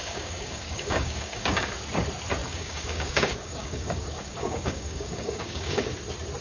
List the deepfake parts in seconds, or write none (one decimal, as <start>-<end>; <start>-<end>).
0.0-1.7; 2.4-5.9